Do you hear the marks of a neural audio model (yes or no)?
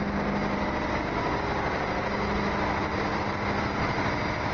no